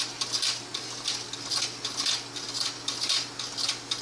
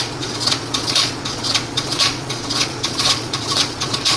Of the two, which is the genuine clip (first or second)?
first